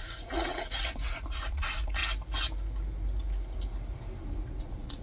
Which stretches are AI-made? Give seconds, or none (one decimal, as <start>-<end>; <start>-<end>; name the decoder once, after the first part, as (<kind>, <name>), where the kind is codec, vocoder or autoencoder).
0.0-2.0 (vocoder, Vocos); 4.6-5.0